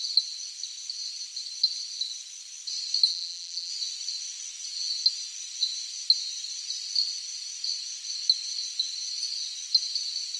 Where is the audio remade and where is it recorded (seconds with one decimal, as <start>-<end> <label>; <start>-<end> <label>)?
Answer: 0.0-3.1 recorded; 3.1-3.7 remade; 3.7-10.4 recorded